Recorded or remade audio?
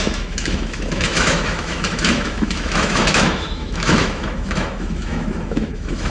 remade